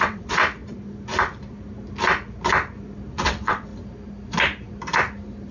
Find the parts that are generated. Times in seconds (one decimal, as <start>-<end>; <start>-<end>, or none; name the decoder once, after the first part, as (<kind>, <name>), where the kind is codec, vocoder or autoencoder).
0.0-0.4 (vocoder, WaveNeXt); 3.1-3.7